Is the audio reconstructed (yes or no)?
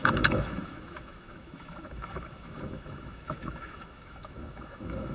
yes